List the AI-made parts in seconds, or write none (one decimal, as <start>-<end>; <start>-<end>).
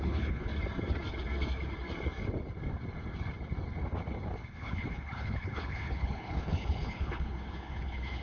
0.0-0.5; 4.5-8.2